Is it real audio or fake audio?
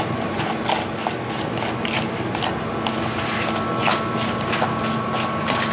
real